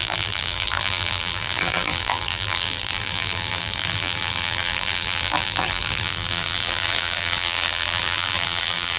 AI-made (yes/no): yes